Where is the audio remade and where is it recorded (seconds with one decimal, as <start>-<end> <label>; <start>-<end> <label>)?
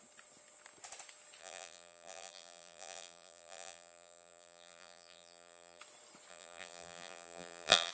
0.0-1.4 recorded; 1.4-5.8 remade; 5.8-6.3 recorded; 6.3-7.9 remade